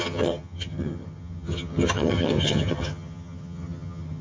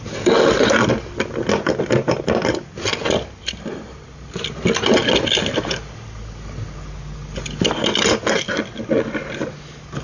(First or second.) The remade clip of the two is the first